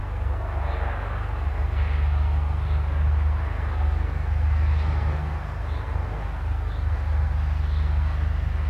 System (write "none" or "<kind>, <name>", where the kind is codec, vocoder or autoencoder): codec, SNAC